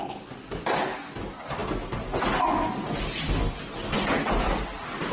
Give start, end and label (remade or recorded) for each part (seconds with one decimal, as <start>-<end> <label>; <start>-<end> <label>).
0.0-5.1 recorded